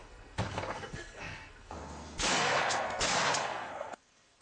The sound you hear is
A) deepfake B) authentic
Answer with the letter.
A